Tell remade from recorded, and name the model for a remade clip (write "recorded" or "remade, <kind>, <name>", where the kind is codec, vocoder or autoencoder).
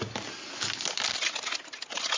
recorded